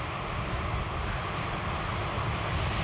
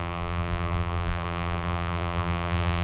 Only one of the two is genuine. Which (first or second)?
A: first